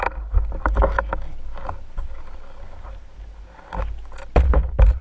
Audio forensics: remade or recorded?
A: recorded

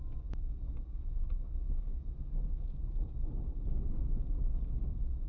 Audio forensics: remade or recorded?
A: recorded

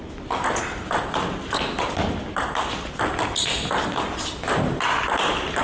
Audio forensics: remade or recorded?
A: recorded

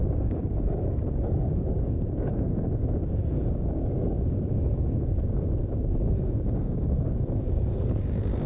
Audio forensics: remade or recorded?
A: remade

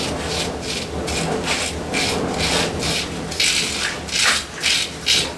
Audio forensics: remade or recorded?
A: recorded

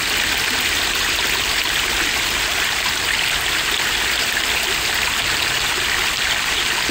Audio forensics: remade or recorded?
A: recorded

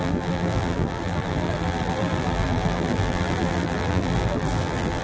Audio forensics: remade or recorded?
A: remade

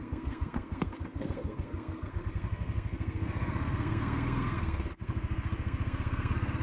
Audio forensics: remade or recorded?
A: remade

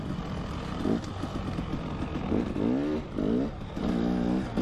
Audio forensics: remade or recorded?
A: recorded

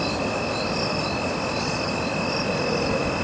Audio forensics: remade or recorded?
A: recorded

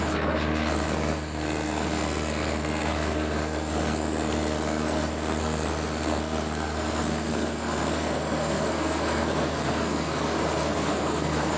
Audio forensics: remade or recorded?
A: remade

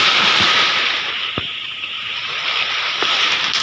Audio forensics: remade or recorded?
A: remade